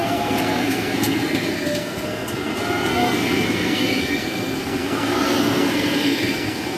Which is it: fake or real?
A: fake